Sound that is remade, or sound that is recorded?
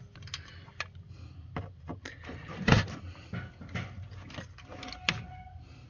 recorded